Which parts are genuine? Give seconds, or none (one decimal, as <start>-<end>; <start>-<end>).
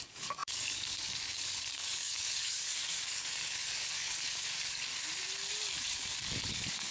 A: 4.9-5.5